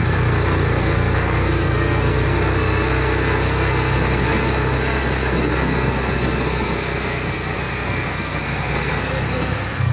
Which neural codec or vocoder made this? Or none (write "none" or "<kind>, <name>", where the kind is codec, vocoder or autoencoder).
codec, SNAC